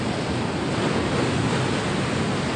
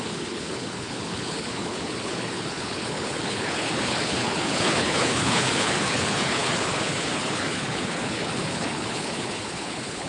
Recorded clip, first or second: first